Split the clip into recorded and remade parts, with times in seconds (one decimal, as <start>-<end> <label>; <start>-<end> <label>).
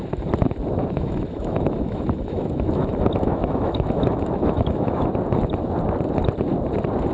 0.0-0.8 recorded; 0.8-5.1 remade; 5.1-7.1 recorded